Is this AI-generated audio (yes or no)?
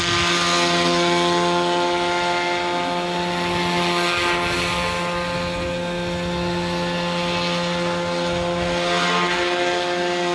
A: no